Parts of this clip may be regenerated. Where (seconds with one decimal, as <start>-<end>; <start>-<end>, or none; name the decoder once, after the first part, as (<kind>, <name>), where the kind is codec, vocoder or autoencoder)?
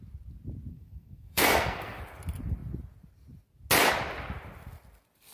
0.7-2.0 (codec, SNAC)